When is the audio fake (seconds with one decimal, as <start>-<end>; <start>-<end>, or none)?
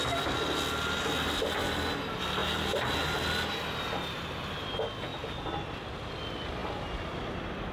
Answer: 2.4-2.9; 5.1-6.1